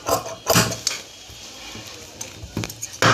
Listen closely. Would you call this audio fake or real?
real